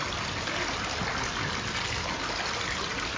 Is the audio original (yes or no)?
yes